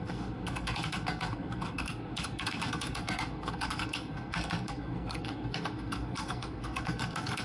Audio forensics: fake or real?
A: fake